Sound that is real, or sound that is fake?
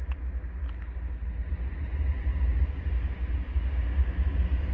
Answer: real